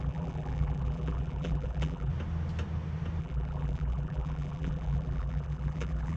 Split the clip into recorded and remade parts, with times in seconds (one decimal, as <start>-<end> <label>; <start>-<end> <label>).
0.0-2.1 remade; 2.1-3.2 recorded; 3.2-6.2 remade